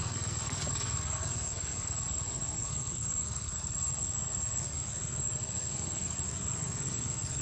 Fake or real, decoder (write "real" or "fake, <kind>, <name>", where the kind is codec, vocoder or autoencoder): fake, codec, SNAC